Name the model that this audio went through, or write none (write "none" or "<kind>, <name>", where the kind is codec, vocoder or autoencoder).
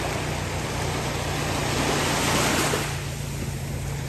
none